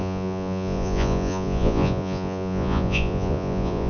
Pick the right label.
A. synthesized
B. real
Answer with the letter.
A